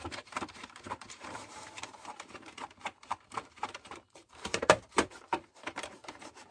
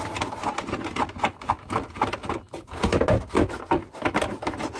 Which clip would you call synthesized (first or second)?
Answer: first